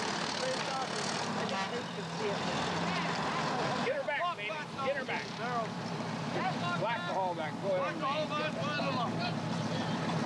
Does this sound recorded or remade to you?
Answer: recorded